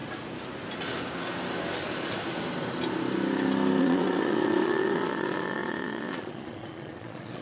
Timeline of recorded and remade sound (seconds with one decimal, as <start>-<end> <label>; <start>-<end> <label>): 0.0-3.8 recorded; 3.8-7.4 remade